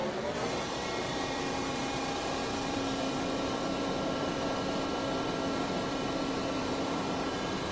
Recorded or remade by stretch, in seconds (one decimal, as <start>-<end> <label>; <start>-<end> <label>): 0.0-1.0 recorded; 1.0-7.7 remade